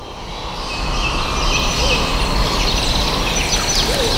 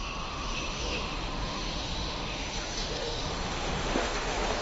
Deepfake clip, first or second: second